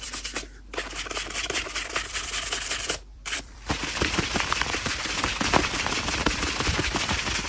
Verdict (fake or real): fake